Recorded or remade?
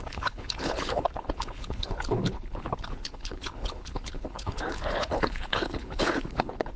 remade